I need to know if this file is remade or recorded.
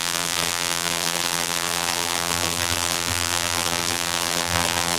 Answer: remade